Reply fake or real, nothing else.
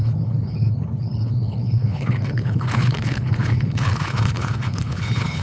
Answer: fake